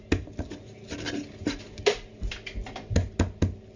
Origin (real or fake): real